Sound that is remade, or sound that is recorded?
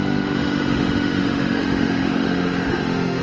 remade